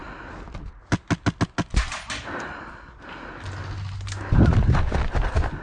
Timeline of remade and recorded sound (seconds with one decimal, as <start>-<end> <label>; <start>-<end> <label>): 0.0-5.6 recorded